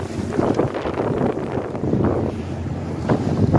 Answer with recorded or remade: remade